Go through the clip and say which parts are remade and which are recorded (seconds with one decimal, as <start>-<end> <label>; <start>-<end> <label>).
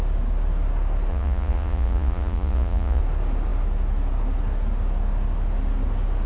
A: 0.0-1.1 recorded; 1.1-3.0 remade; 3.0-6.3 recorded